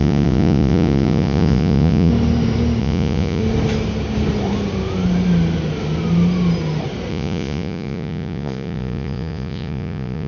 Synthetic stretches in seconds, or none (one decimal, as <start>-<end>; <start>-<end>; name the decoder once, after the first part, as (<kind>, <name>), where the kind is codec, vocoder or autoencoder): 0.0-2.1 (vocoder, Vocos); 2.8-3.4; 7.1-10.3